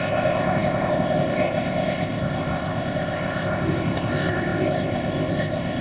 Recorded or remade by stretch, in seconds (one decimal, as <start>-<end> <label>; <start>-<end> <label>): 0.0-5.8 remade